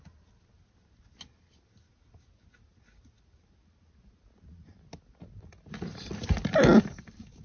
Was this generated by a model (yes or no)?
no